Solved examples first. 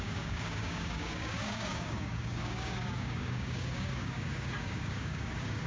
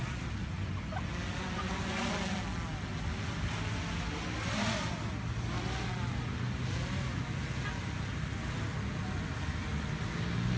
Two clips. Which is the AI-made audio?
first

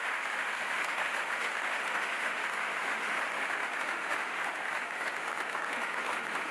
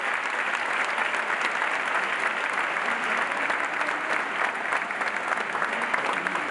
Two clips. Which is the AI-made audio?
first